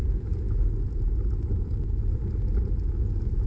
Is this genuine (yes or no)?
yes